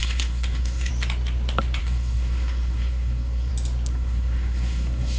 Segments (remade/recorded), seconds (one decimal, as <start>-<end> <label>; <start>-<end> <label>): 0.0-0.9 remade; 0.9-1.8 recorded; 1.8-3.5 remade; 3.5-3.9 recorded; 3.9-5.2 remade